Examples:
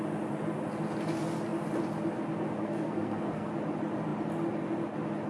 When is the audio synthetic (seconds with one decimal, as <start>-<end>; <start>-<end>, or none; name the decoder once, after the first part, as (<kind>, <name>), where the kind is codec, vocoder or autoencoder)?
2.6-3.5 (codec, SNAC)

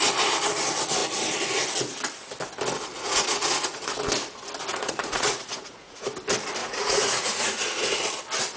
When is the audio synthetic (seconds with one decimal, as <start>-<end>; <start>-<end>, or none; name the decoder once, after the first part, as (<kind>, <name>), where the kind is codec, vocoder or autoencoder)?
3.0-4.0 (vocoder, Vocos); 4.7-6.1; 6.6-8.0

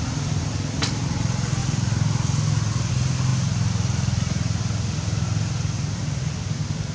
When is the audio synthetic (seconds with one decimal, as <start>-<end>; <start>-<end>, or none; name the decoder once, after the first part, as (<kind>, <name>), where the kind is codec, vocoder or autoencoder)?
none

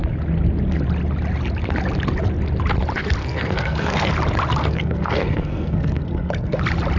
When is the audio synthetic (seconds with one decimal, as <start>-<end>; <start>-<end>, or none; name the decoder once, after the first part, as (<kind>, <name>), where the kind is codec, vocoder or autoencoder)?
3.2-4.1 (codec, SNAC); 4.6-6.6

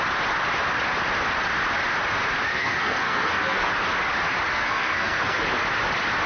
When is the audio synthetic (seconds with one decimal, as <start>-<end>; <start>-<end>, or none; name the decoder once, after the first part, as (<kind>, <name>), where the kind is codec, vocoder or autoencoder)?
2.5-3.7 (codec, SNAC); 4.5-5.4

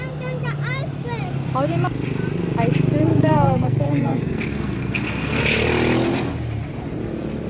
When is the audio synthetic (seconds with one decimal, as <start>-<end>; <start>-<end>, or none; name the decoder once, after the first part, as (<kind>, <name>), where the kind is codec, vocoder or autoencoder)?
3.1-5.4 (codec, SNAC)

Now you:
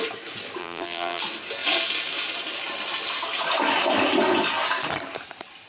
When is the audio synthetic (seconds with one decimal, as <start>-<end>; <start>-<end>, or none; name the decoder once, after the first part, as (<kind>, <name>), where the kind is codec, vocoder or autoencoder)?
0.6-1.2 (vocoder, BigVGAN v2)

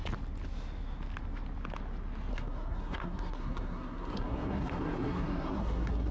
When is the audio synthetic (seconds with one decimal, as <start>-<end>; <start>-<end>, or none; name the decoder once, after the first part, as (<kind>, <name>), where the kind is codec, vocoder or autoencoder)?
2.3-6.1 (codec, SNAC)